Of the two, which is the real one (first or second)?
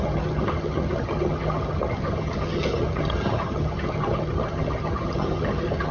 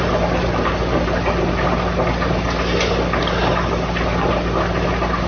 second